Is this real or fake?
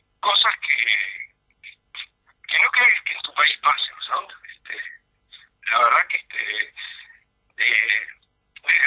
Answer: real